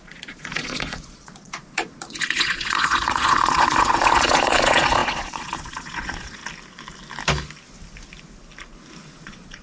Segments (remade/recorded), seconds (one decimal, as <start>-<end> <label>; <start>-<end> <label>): 0.0-6.4 remade; 6.4-9.1 recorded; 9.1-9.6 remade

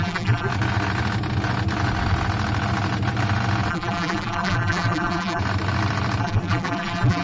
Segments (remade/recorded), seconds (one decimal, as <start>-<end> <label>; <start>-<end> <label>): 0.0-0.5 remade; 0.5-3.7 recorded; 3.7-5.4 remade; 5.4-6.2 recorded; 6.2-7.2 remade

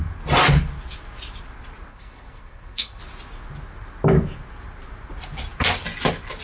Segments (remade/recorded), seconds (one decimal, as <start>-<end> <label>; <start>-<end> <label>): 0.0-1.9 recorded; 1.9-3.0 remade; 3.0-6.4 recorded